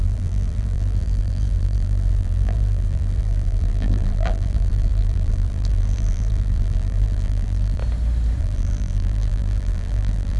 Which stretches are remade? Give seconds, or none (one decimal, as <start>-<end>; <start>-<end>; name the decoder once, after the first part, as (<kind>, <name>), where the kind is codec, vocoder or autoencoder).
0.0-7.8 (vocoder, BigVGAN v2); 8.4-10.4